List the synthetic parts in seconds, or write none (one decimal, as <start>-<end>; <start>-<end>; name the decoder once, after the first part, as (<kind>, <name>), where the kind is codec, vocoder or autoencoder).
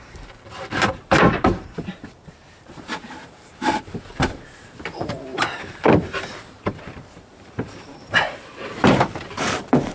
0.0-9.9 (vocoder, BigVGAN v2)